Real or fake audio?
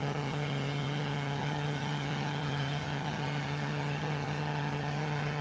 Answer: fake